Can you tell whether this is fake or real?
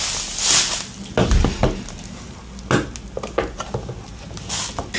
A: real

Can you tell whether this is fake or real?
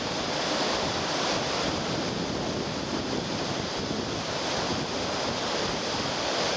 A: real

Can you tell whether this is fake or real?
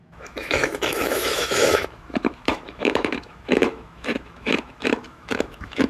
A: fake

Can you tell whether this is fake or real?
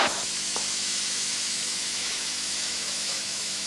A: fake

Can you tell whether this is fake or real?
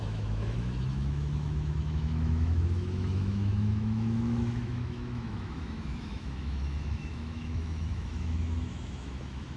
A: fake